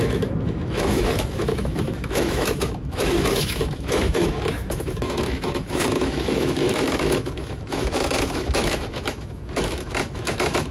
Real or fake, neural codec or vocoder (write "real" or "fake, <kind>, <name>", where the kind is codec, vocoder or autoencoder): fake, autoencoder, DAC-VAE